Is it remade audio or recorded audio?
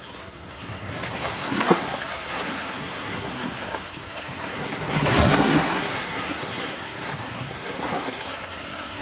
remade